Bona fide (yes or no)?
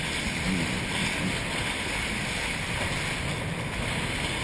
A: yes